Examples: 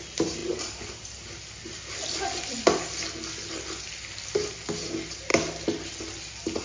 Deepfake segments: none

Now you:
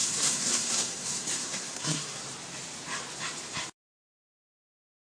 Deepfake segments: 0.0-2.2 (codec, SNAC); 4.6-5.2